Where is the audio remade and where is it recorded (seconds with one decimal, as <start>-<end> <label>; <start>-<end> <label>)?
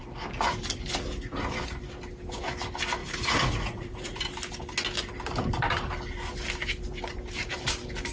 0.0-3.0 recorded; 3.0-4.2 remade; 4.2-8.1 recorded